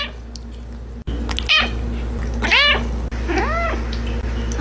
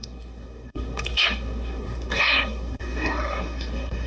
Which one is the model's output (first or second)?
second